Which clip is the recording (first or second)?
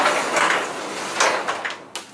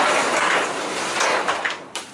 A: first